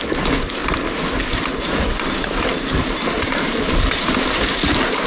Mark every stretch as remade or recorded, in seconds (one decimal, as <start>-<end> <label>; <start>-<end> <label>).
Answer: 0.0-5.1 recorded